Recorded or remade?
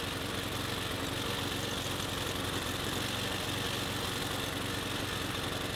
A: recorded